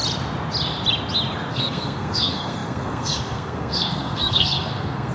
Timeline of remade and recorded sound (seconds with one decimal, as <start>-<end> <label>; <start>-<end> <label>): 0.0-1.5 recorded; 1.5-5.1 remade